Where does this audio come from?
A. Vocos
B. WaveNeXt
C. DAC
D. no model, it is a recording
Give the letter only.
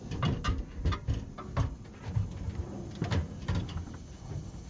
D